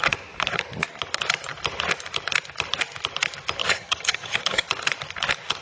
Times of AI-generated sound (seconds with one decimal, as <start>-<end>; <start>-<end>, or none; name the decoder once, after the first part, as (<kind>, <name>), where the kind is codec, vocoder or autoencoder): 3.6-4.6 (vocoder, HiFi-GAN)